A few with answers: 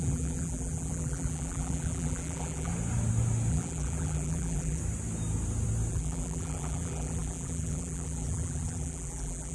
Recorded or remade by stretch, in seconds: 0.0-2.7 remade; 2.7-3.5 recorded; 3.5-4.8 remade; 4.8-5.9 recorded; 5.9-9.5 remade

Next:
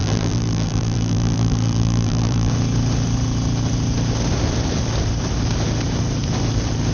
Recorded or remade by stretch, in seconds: 0.0-2.5 remade; 2.5-6.9 recorded

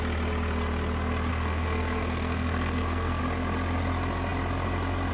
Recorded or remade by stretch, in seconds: 0.0-1.3 recorded; 1.3-3.2 remade; 3.2-5.1 recorded

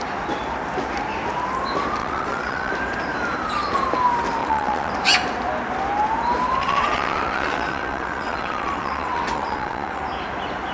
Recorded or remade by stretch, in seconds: 0.0-2.0 recorded; 2.0-2.7 remade; 2.7-4.4 recorded; 4.4-4.9 remade; 4.9-6.6 recorded; 6.6-10.0 remade; 10.0-10.7 recorded

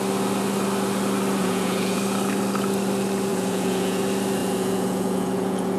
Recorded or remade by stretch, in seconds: 0.0-1.4 recorded; 1.4-2.0 remade; 2.0-3.3 recorded; 3.3-4.0 remade; 4.0-4.4 recorded; 4.4-5.8 remade

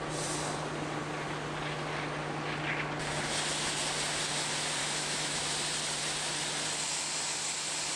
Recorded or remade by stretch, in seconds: 0.0-4.8 recorded; 4.8-5.4 remade; 5.4-8.0 recorded